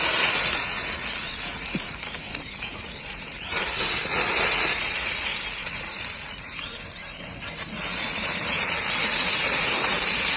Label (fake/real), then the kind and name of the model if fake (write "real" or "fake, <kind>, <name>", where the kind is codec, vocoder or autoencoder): fake, vocoder, Vocos